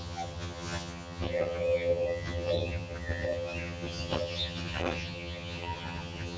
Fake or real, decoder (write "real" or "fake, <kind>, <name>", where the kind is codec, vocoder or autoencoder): fake, vocoder, HiFi-GAN